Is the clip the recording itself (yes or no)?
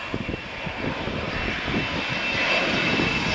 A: yes